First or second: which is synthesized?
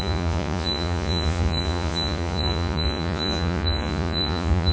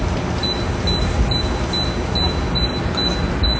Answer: first